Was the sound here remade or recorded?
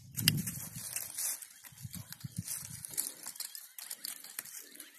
recorded